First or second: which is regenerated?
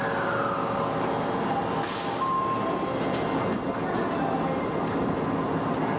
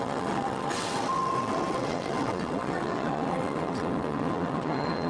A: second